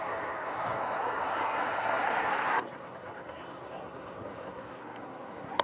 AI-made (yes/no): yes